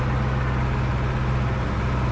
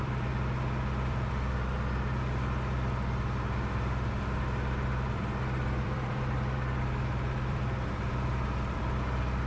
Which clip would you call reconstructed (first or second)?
second